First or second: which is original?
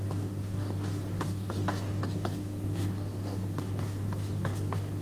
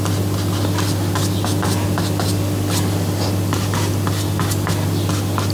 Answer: second